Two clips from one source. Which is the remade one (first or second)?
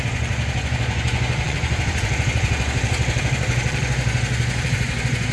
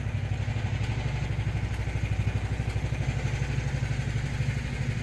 first